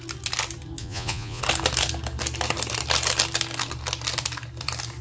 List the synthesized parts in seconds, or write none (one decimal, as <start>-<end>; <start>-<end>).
0.8-1.4